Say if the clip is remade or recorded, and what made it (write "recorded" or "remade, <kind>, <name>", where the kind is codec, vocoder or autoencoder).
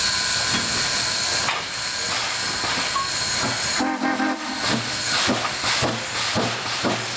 recorded